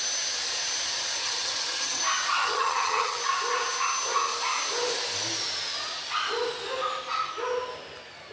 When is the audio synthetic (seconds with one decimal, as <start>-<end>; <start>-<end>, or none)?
1.2-2.0; 2.4-3.2